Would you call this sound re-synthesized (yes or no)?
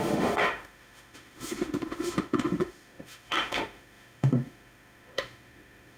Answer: yes